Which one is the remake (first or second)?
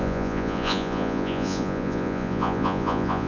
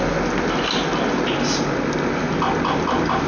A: first